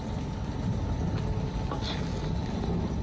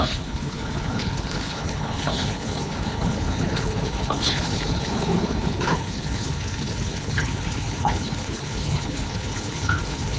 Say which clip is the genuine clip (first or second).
first